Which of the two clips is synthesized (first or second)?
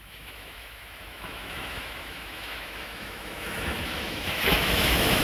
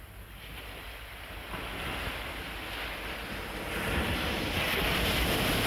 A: first